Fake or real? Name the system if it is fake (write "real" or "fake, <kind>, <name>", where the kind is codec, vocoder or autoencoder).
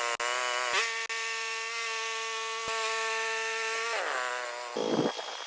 real